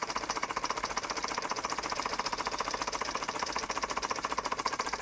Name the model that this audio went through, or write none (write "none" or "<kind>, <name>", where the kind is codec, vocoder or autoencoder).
vocoder, BigVGAN v2